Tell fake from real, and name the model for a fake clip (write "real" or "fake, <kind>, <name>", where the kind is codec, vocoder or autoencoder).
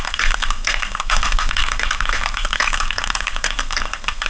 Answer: fake, codec, SNAC